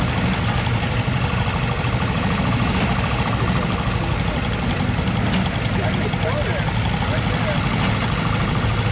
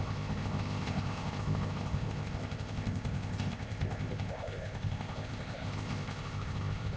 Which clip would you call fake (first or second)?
second